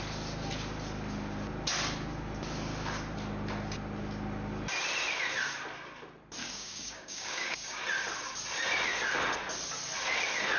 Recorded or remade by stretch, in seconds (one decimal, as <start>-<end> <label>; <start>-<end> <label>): 0.0-6.4 recorded; 6.4-7.8 remade; 7.8-10.6 recorded